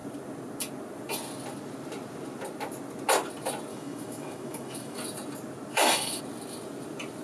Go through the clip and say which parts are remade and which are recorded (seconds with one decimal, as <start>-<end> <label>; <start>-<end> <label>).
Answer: 0.0-3.7 recorded; 3.7-5.0 remade; 5.0-5.7 recorded; 5.7-6.2 remade; 6.2-7.2 recorded